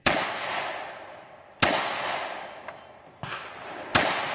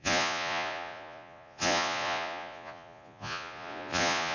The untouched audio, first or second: first